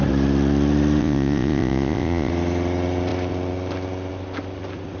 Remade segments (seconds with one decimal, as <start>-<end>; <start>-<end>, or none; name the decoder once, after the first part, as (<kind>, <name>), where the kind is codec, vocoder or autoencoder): 1.0-2.3 (vocoder, Vocos)